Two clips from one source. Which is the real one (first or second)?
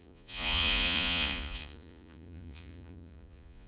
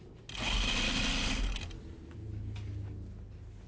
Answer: second